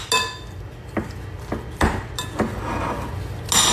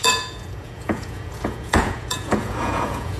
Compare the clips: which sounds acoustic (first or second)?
first